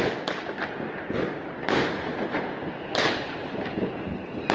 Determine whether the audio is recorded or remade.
recorded